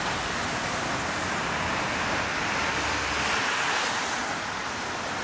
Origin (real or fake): real